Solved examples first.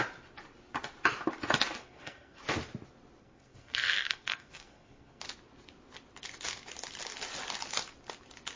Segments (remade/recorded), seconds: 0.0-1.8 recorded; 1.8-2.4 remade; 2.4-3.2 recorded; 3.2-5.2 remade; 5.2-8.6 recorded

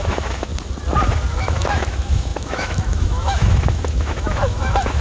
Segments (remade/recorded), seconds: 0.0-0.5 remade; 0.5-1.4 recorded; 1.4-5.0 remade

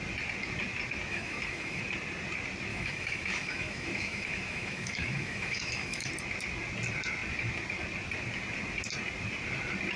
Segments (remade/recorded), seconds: 0.0-1.1 recorded; 1.1-1.8 remade; 1.8-2.7 recorded; 2.7-6.1 remade; 6.1-10.0 recorded

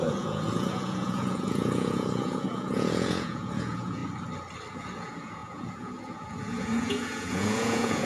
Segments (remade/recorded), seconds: 0.0-4.0 remade; 4.0-4.7 recorded; 4.7-8.1 remade

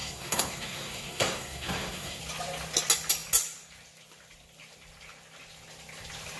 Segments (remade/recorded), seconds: 0.0-2.2 remade; 2.2-6.4 recorded

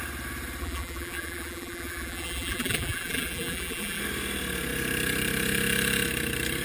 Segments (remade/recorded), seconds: 0.0-0.6 recorded; 0.6-4.0 remade; 4.0-6.6 recorded

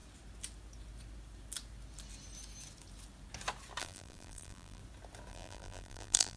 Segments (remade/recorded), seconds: 0.0-3.8 recorded; 3.8-4.8 remade; 4.8-5.3 recorded; 5.3-6.4 remade